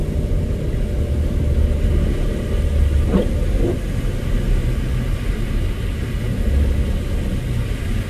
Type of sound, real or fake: real